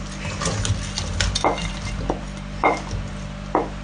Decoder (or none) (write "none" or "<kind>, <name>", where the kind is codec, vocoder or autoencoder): none